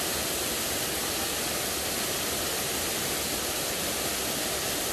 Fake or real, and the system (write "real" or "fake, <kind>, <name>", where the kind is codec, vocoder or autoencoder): real